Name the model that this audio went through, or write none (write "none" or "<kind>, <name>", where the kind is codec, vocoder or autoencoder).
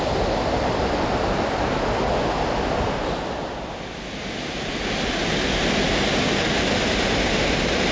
none